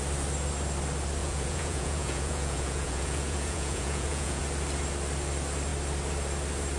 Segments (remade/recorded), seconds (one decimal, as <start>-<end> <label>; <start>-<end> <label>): 0.0-1.2 recorded; 1.2-4.4 remade; 4.4-6.8 recorded